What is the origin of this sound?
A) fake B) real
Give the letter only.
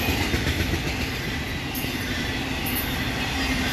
B